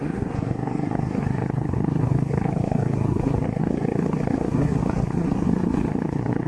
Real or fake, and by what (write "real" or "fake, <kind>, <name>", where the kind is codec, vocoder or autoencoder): fake, codec, SNAC